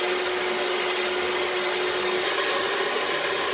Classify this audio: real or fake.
real